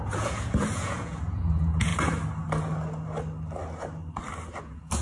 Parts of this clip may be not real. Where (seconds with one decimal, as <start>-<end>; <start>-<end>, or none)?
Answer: 0.0-1.9; 4.6-5.0